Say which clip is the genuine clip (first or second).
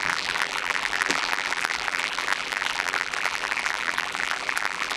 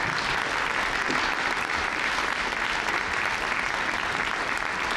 second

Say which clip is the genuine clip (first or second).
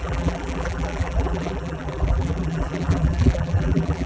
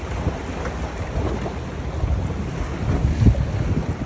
second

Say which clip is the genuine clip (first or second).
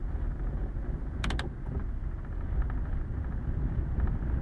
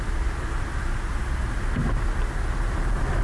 second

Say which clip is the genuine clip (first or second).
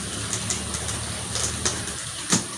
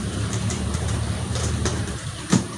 first